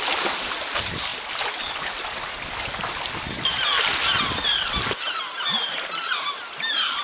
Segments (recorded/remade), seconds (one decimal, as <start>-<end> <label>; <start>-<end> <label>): 0.0-7.0 recorded